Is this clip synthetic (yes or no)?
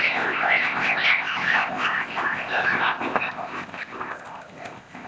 yes